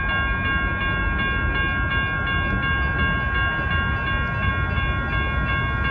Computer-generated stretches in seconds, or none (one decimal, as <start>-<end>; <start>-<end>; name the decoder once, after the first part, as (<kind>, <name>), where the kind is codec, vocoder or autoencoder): none